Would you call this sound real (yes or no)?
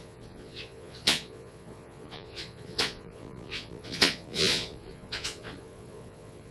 no